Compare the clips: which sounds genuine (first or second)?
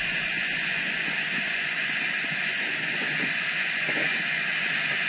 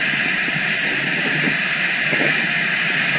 second